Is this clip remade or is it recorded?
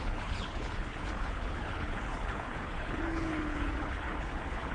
remade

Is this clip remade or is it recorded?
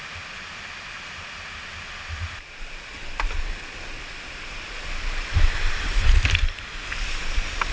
recorded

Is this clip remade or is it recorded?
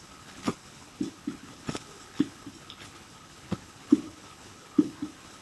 remade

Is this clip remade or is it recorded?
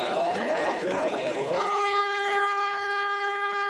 remade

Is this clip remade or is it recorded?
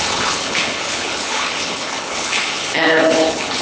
remade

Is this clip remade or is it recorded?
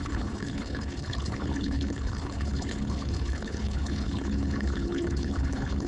remade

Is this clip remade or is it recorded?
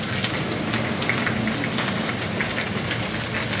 recorded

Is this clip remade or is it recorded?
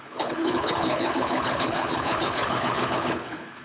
remade